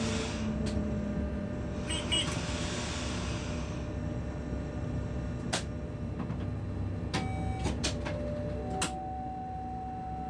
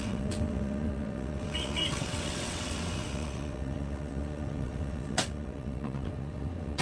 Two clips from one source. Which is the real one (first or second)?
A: first